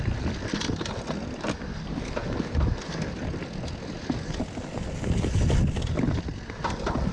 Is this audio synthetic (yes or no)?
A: no